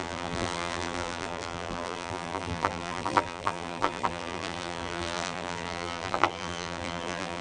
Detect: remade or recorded remade